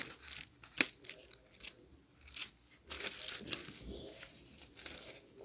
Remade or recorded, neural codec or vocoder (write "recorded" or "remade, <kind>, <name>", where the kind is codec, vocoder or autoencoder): recorded